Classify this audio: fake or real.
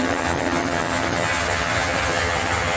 fake